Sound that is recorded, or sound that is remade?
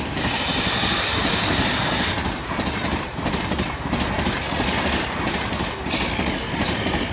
recorded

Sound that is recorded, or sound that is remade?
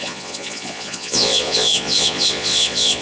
remade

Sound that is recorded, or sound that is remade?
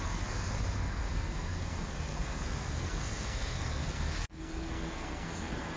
remade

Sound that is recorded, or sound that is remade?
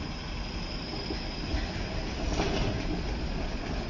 recorded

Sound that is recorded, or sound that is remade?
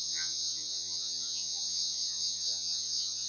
remade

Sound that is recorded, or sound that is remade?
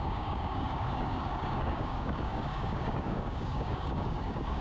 remade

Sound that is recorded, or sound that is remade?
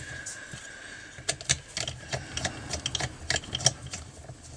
recorded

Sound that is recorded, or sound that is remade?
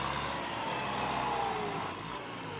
recorded